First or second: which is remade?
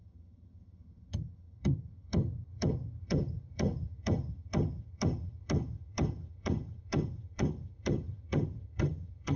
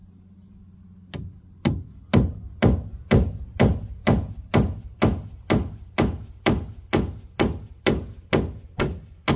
first